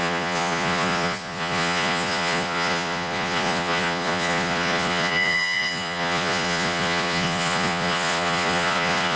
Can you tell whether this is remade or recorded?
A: remade